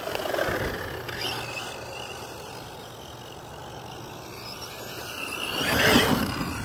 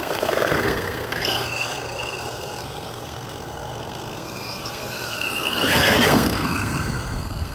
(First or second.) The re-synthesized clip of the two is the second